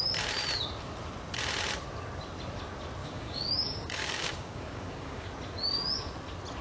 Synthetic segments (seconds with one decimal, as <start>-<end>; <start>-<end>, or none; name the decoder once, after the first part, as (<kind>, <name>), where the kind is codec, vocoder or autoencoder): 3.0-5.3 (codec, DAC)